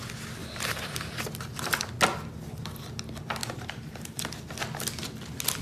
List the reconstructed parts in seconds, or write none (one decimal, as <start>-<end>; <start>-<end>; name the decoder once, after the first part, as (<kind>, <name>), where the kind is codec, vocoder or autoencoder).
0.4-1.9 (vocoder, BigVGAN v2); 3.4-4.2